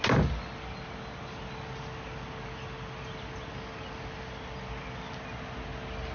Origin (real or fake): real